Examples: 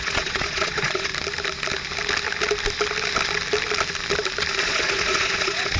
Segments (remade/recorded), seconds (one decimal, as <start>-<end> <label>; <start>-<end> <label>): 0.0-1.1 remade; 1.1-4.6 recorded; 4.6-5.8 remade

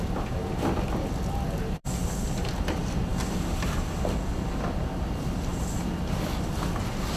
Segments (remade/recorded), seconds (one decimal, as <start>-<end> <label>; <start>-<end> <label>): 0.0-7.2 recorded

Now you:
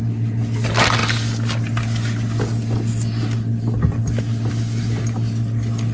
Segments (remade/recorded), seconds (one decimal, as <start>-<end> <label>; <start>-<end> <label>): 0.0-5.9 recorded

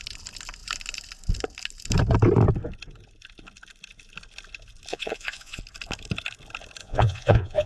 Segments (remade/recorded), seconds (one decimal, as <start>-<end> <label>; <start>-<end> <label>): 0.0-4.9 recorded; 4.9-5.6 remade; 5.6-6.8 recorded; 6.8-7.7 remade